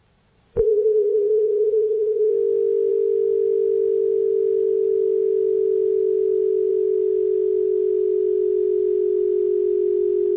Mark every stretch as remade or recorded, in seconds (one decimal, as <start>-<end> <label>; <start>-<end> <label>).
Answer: 0.0-2.3 remade; 2.3-10.4 recorded